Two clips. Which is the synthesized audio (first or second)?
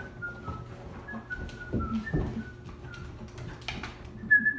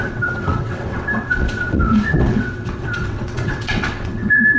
second